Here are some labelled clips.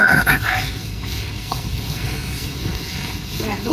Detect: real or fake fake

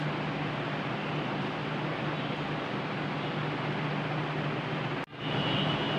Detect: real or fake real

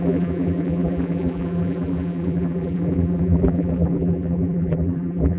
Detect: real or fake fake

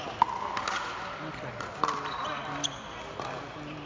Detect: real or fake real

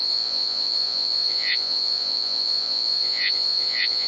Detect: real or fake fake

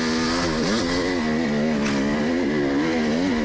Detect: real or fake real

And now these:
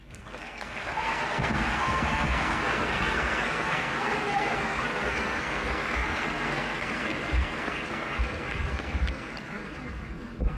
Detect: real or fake fake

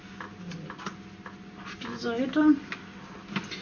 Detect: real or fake real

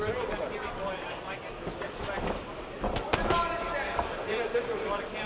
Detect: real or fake real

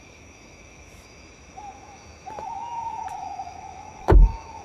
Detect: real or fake fake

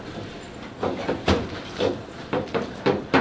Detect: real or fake fake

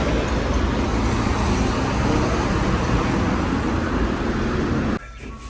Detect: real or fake real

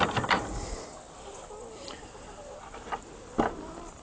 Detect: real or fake real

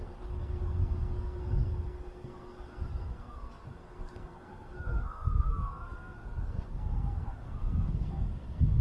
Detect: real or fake fake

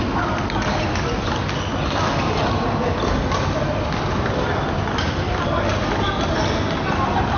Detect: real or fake real